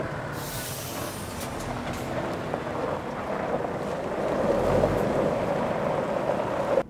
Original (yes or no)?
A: yes